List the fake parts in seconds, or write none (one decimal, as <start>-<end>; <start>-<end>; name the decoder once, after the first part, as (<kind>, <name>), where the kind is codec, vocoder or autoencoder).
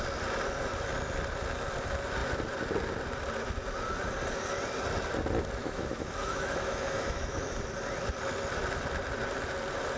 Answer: 5.6-7.6 (autoencoder, DAC-VAE)